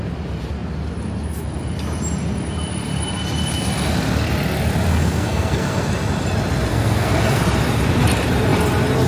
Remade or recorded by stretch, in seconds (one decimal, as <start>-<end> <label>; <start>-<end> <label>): 0.0-4.9 recorded; 4.9-5.9 remade; 5.9-6.7 recorded; 6.7-7.4 remade; 7.4-9.1 recorded